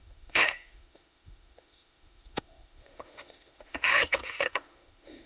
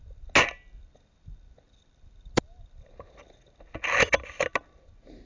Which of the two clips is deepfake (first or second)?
first